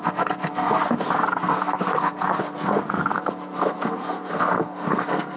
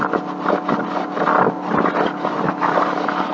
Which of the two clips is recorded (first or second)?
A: second